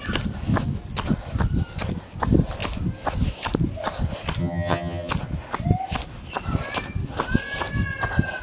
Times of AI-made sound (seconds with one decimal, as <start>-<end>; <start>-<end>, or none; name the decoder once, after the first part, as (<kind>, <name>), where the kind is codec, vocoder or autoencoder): 4.4-5.1 (vocoder, HiFi-GAN)